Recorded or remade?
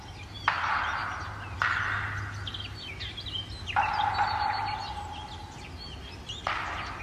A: recorded